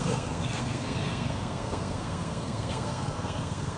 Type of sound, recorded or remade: remade